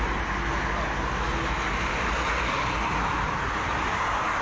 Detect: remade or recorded recorded